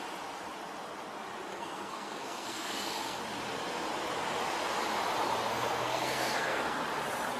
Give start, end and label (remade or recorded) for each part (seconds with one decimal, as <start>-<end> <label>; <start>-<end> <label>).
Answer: 0.0-1.5 recorded; 1.5-3.2 remade; 3.2-5.5 recorded; 5.5-6.8 remade; 6.8-7.4 recorded